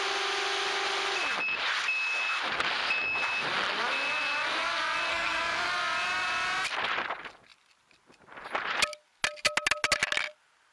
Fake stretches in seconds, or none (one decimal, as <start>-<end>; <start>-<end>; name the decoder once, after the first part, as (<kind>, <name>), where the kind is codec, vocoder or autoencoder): 5.1-5.7 (codec, SNAC)